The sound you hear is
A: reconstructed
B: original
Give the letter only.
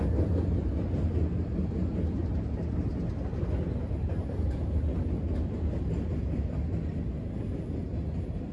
B